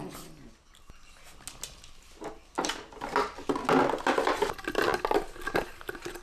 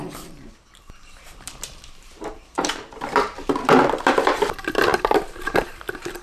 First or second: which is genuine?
first